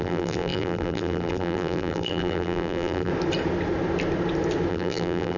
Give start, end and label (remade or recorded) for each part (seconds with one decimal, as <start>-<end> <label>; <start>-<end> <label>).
0.0-3.1 remade; 3.1-4.7 recorded; 4.7-5.4 remade